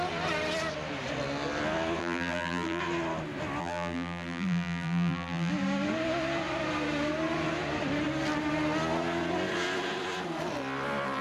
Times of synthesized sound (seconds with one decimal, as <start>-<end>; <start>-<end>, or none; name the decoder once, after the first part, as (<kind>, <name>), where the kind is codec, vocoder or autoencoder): 2.0-2.8 (vocoder, BigVGAN v2); 3.6-5.5